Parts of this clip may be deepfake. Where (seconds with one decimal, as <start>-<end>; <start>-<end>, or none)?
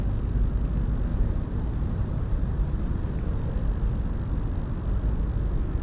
1.1-3.4